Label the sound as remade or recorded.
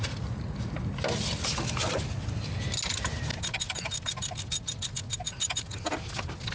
recorded